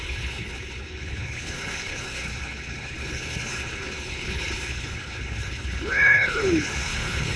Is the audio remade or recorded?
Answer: remade